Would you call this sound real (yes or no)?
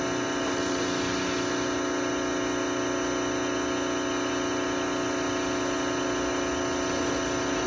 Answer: yes